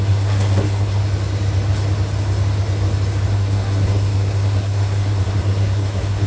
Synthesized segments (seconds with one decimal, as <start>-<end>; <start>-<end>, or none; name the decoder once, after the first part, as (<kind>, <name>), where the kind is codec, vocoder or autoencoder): 0.0-1.0 (codec, SNAC); 3.3-6.3